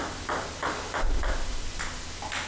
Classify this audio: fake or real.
real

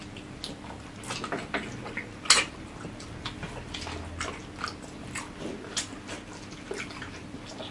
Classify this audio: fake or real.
real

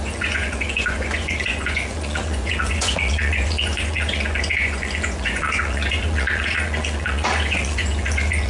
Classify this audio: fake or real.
fake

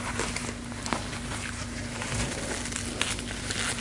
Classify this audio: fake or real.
real